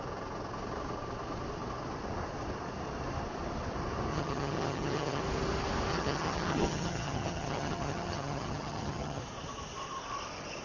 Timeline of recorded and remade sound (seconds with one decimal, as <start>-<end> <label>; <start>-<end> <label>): 0.0-4.1 recorded; 4.1-5.2 remade; 5.2-5.9 recorded; 5.9-9.2 remade; 9.2-10.6 recorded